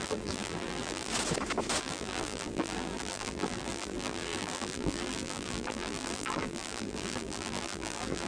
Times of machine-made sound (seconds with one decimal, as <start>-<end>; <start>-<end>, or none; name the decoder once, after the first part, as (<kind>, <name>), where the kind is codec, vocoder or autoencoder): 0.0-1.1 (vocoder, BigVGAN v2); 1.8-8.3